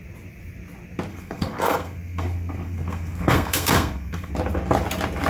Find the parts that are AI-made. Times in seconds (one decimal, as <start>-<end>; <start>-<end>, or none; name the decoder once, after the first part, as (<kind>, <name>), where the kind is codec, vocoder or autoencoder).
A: 1.1-4.3 (codec, SNAC)